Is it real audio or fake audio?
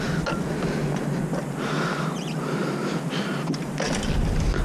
real